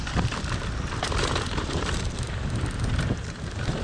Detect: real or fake real